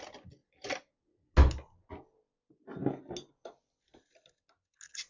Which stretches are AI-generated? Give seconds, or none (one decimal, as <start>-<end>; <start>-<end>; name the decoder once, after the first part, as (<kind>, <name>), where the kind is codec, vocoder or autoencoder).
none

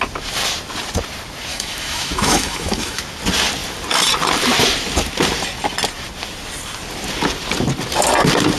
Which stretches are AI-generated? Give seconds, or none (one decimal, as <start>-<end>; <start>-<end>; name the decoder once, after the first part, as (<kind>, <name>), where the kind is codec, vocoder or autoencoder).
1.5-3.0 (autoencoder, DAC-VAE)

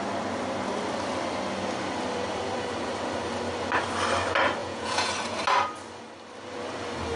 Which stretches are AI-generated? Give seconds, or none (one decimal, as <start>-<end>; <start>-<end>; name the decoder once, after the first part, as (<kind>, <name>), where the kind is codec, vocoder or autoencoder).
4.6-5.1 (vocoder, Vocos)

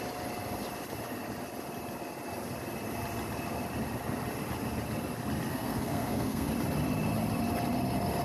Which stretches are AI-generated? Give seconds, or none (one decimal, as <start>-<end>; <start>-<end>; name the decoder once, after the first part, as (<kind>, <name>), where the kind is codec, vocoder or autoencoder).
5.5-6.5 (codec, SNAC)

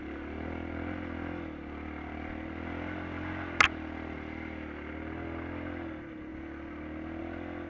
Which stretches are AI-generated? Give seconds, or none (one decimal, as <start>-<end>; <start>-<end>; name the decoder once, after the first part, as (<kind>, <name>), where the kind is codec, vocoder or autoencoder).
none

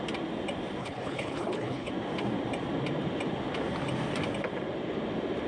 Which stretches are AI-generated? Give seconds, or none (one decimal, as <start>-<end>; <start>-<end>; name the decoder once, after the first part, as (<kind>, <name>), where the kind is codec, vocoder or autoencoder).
0.8-1.9 (codec, HILCodec)

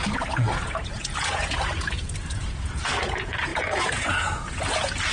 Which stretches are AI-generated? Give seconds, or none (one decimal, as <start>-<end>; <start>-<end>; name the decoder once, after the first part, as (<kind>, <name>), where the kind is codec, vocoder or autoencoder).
0.0-5.1 (vocoder, Vocos)